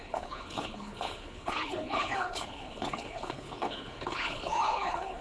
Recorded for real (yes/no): no